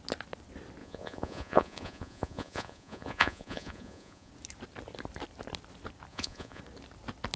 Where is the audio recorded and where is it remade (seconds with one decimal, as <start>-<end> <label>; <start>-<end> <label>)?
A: 0.0-0.8 recorded; 0.8-4.3 remade; 4.3-6.1 recorded; 6.1-6.6 remade; 6.6-7.4 recorded